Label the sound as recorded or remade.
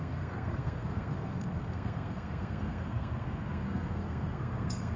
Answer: remade